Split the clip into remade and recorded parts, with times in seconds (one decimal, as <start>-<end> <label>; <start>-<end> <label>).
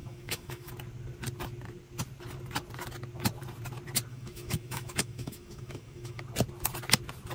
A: 0.0-0.7 remade; 0.7-4.1 recorded; 4.1-6.2 remade; 6.2-7.3 recorded